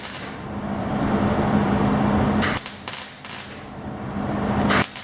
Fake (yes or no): yes